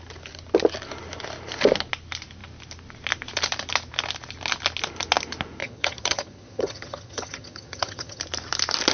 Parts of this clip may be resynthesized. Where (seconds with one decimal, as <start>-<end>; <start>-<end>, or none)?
5.6-8.2